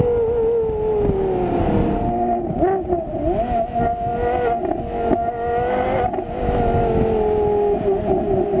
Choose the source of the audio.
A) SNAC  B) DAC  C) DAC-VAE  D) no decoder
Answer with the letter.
D